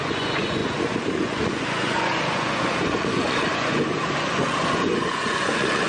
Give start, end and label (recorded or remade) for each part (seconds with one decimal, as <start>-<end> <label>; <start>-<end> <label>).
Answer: 0.0-5.9 remade